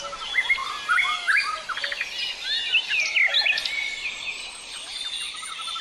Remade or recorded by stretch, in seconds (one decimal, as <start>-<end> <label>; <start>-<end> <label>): 0.0-5.8 recorded